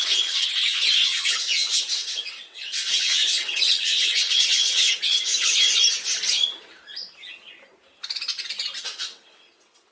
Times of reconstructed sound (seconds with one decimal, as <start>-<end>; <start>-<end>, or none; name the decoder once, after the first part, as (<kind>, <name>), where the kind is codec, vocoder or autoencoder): 0.0-5.3 (vocoder, WaveNeXt); 8.8-9.9